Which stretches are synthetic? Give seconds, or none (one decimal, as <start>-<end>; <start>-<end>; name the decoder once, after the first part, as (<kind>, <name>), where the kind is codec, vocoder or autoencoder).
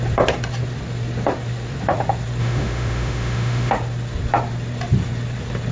2.4-3.7 (autoencoder, DAC-VAE)